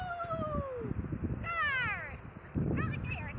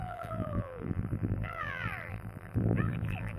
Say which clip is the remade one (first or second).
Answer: second